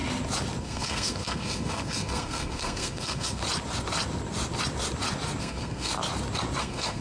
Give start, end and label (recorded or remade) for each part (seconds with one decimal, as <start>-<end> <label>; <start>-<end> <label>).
0.0-0.6 recorded; 0.6-3.4 remade; 3.4-5.4 recorded; 5.4-5.9 remade; 5.9-6.6 recorded; 6.6-7.0 remade